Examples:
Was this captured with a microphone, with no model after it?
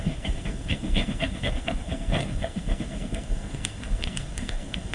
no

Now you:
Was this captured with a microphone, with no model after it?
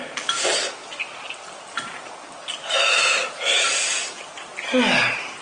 yes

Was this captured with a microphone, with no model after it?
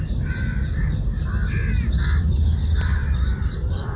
no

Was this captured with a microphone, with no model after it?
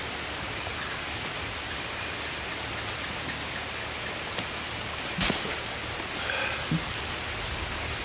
yes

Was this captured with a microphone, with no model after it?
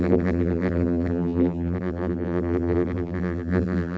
no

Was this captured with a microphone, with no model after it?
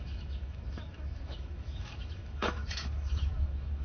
no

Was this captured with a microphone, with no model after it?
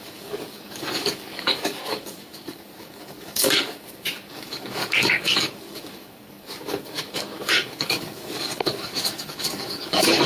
no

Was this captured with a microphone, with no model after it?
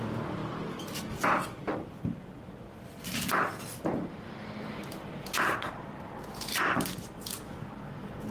yes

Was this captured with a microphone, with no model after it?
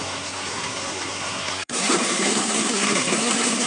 no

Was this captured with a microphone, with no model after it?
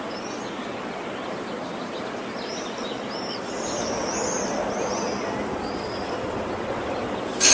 yes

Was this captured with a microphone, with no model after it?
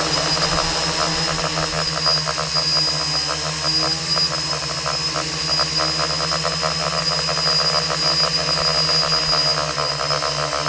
yes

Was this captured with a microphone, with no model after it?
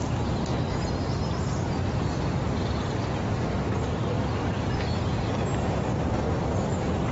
yes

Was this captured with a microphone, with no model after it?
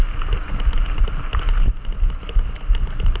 yes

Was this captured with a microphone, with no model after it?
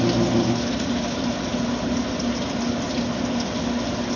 yes